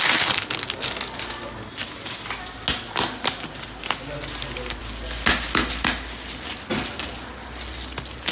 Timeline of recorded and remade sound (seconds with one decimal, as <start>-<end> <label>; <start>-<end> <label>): 0.0-8.3 recorded